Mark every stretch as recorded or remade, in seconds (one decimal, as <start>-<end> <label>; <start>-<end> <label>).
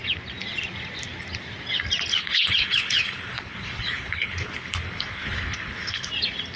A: 0.0-2.1 recorded; 2.1-6.1 remade; 6.1-6.6 recorded